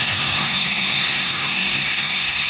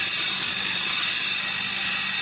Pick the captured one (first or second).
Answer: second